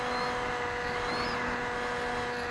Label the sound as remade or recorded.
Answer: recorded